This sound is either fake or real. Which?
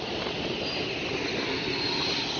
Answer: real